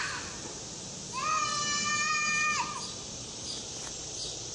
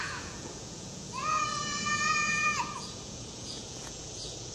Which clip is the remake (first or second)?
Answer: second